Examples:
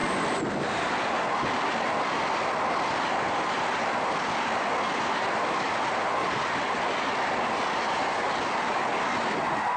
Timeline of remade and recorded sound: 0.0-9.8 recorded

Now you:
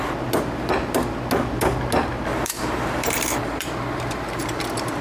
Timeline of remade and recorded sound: 0.0-2.3 recorded; 2.3-4.4 remade; 4.4-5.0 recorded

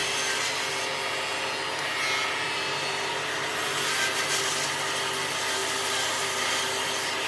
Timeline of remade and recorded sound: 0.0-5.6 recorded; 5.6-6.4 remade; 6.4-7.3 recorded

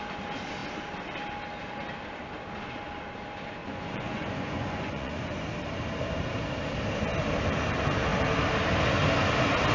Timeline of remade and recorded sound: 0.0-3.6 recorded; 3.6-5.4 remade; 5.4-9.7 recorded

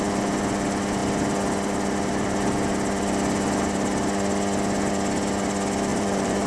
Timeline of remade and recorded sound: 0.0-5.9 recorded; 5.9-6.5 remade